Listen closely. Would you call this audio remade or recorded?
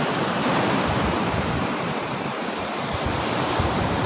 remade